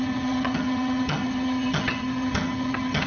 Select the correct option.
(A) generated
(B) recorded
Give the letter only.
A